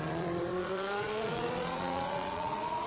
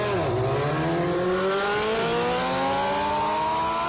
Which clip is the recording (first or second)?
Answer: second